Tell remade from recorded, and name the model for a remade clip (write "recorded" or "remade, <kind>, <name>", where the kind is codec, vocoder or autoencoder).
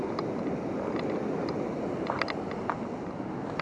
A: recorded